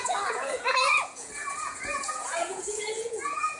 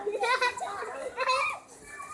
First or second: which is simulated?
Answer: first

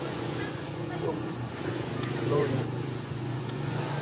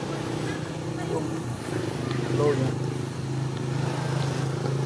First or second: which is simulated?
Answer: first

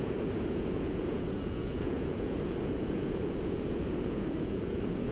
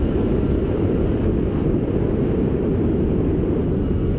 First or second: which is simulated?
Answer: first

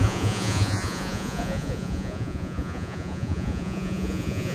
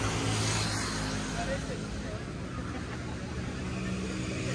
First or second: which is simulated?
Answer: first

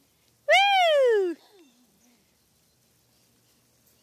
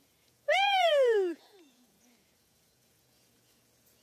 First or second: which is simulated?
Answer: second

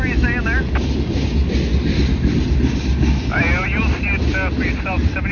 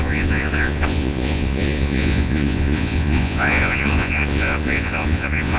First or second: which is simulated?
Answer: second